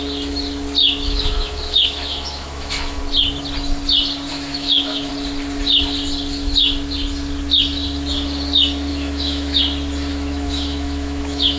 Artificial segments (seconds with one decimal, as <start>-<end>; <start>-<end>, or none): 0.8-3.0; 4.3-5.1; 8.9-9.6; 10.1-11.6